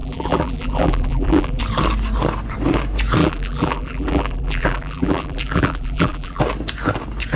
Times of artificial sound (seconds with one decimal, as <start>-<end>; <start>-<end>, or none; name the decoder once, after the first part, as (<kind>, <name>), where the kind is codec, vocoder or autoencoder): 0.0-1.6 (vocoder, BigVGAN v2); 3.2-6.4